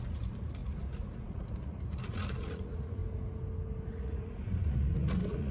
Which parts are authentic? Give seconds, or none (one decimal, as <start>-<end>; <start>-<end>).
3.0-3.9